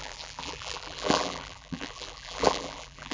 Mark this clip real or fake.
fake